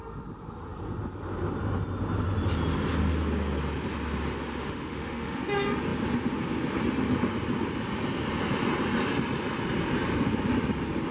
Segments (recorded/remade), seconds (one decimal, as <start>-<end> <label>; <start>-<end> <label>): 0.0-4.6 recorded; 4.6-5.4 remade; 5.4-11.1 recorded